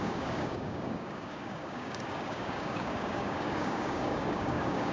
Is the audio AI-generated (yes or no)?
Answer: yes